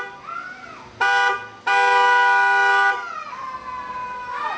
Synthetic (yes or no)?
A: no